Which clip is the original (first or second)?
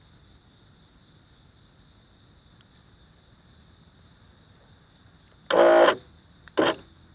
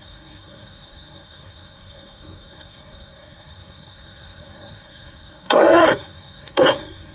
first